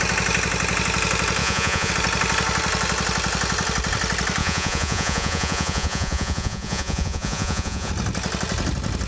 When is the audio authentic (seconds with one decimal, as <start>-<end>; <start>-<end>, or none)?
0.0-1.4; 1.9-4.4; 7.9-9.1